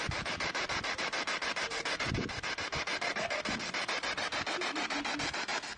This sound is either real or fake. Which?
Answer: real